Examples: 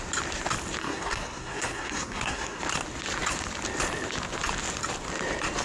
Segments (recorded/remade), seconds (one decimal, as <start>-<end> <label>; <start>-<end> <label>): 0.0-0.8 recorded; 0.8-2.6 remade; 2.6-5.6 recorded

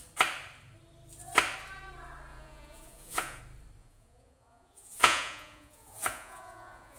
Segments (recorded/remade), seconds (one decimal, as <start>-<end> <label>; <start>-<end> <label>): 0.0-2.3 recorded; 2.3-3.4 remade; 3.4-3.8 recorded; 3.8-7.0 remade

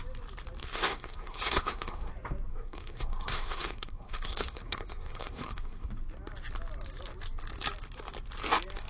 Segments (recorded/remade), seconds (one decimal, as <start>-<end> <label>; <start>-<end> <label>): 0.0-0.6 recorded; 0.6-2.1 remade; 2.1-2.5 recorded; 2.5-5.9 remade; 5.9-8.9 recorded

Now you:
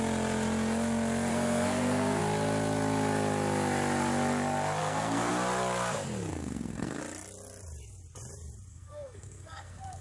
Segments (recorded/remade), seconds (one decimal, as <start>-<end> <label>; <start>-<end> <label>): 0.0-1.3 recorded; 1.3-2.2 remade; 2.2-4.8 recorded; 4.8-5.3 remade; 5.3-6.3 recorded; 6.3-7.0 remade; 7.0-8.7 recorded; 8.7-10.0 remade